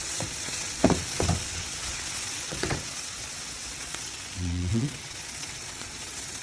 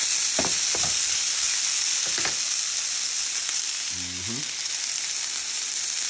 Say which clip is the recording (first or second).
second